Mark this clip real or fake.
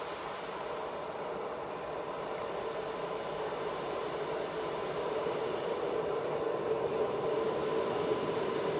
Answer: real